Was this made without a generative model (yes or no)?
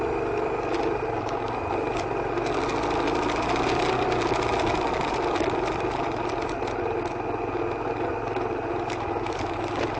yes